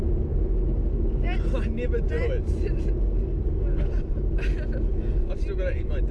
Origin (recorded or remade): recorded